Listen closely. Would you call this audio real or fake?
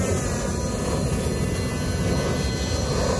real